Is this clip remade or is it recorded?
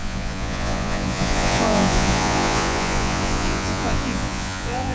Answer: remade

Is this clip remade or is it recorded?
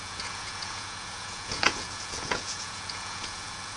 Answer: remade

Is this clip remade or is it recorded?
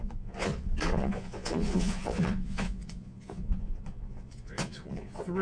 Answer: remade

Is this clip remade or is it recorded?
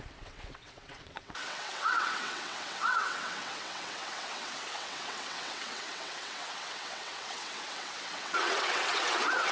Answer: remade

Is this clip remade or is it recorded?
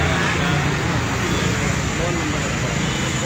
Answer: recorded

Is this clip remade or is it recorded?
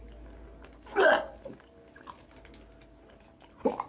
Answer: recorded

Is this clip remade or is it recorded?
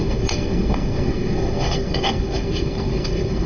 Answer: remade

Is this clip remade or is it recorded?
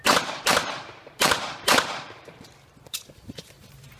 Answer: remade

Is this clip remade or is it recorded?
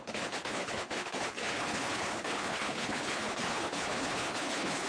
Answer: remade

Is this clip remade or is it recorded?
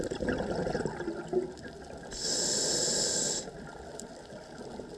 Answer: recorded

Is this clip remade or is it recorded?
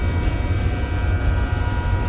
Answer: recorded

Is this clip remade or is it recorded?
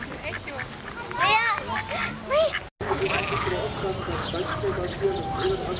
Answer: recorded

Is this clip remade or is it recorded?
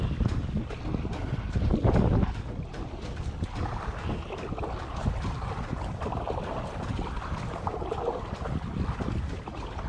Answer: recorded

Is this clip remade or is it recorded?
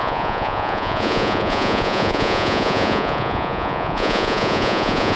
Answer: remade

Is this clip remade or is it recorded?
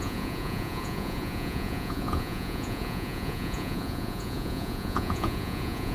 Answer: remade